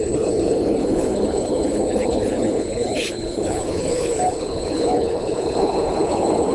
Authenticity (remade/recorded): remade